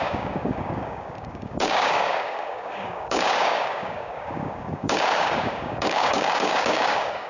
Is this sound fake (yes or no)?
yes